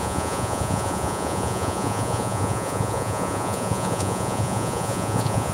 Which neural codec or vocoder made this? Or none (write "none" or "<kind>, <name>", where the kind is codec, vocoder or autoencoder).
vocoder, Vocos